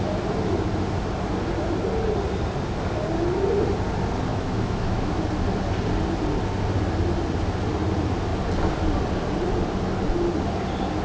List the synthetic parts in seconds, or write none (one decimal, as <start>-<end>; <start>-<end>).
4.3-5.3